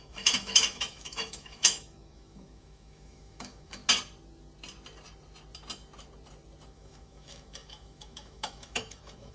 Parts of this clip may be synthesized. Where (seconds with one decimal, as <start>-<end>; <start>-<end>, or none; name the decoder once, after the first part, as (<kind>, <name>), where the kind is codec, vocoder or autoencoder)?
0.0-3.8 (autoencoder, DAC-VAE); 6.7-9.3